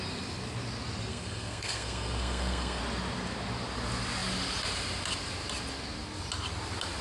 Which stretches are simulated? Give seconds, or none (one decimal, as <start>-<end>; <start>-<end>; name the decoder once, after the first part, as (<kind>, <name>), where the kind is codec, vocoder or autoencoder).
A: 1.1-2.8 (codec, SNAC)